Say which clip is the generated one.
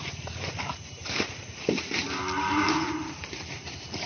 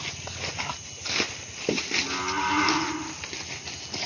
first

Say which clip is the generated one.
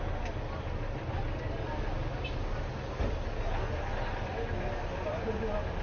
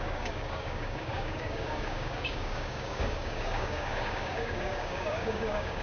second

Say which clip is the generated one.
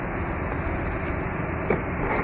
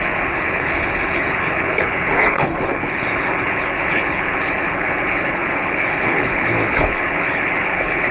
second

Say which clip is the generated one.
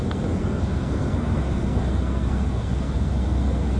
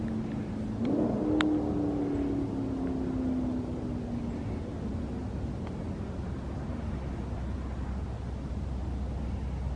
first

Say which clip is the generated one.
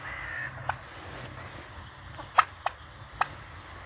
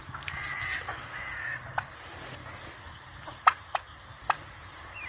second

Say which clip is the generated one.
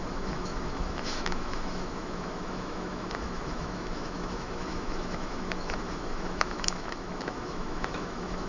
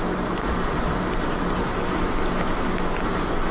first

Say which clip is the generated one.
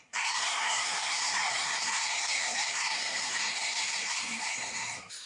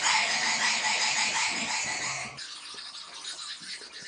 first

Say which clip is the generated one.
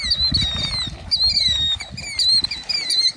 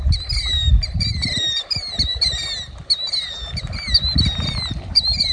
second